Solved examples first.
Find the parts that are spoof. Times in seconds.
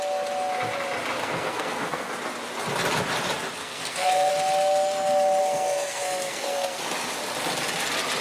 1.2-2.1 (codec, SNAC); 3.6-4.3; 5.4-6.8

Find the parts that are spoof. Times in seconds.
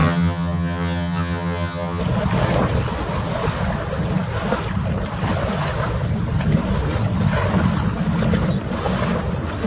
0.0-2.0 (vocoder, HiFi-GAN)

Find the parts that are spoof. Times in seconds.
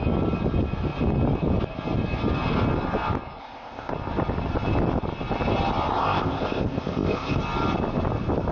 3.4-3.9 (codec, ZipCodec); 5.9-7.4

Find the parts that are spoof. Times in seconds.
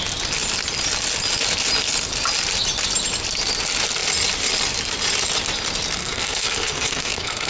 6.0-7.5 (codec, SNAC)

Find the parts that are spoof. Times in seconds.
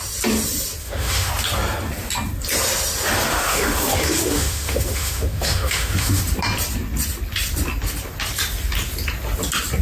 0.8-1.3 (autoencoder, DAC-VAE); 3.3-6.2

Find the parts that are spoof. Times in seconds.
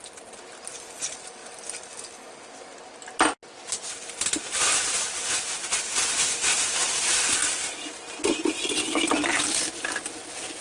none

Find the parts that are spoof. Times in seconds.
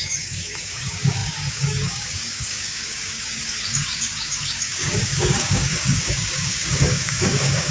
0.0-7.7 (codec, DAC)